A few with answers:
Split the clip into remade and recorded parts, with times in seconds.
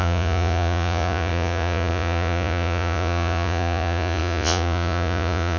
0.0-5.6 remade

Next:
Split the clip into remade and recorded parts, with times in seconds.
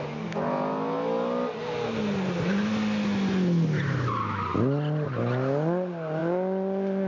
0.0-7.1 recorded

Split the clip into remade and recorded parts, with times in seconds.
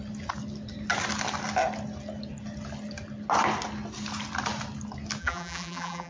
0.0-5.2 recorded; 5.2-6.1 remade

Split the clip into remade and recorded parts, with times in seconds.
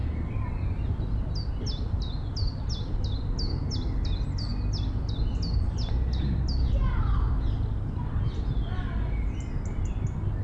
0.0-10.4 recorded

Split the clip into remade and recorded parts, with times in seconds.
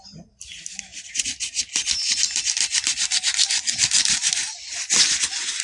0.0-5.6 recorded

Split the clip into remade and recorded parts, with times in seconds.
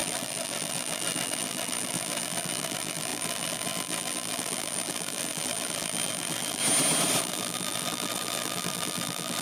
0.0-6.6 remade; 6.6-7.2 recorded; 7.2-9.4 remade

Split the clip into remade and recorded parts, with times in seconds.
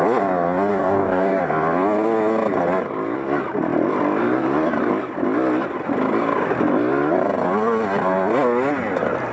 0.0-0.7 recorded; 0.7-1.4 remade; 1.4-9.3 recorded